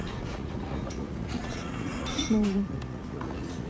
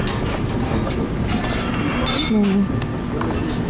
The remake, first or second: first